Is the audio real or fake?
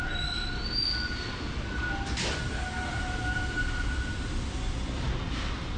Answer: real